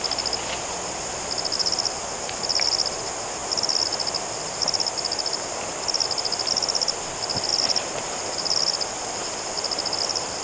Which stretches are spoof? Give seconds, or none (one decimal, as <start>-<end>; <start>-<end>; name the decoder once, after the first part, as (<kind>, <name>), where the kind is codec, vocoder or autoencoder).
none